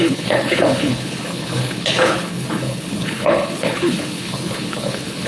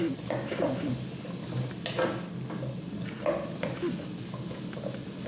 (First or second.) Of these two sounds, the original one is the second